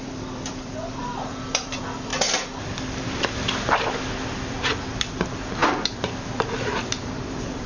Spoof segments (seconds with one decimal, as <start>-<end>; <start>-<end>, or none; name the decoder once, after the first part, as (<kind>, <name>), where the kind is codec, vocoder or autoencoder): 0.0-7.7 (vocoder, BigVGAN v2)